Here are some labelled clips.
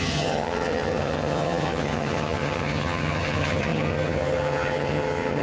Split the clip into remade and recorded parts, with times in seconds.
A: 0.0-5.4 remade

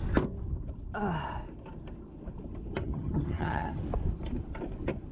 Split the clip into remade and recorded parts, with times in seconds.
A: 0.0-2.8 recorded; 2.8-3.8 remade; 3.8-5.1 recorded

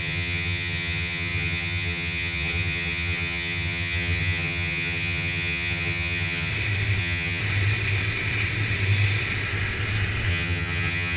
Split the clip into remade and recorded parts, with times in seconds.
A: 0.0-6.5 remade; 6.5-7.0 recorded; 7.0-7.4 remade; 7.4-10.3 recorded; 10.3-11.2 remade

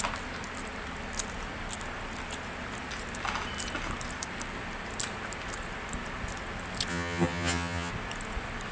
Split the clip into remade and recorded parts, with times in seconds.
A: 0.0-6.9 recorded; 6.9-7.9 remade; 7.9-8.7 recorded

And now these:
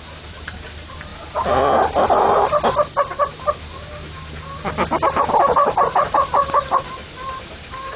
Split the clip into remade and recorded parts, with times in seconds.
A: 0.0-8.0 recorded